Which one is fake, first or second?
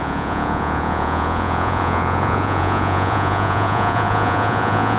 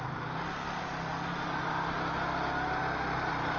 first